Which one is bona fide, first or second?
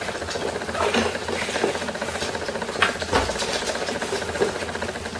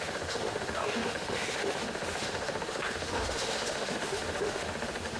first